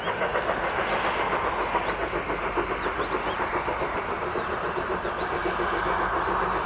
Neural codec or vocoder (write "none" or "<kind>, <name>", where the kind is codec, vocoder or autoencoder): none